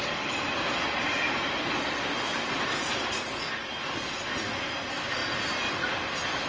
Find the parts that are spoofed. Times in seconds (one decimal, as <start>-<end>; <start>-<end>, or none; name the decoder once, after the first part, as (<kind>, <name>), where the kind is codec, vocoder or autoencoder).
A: none